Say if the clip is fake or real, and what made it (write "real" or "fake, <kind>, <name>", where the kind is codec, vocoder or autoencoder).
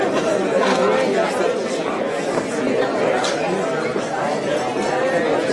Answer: real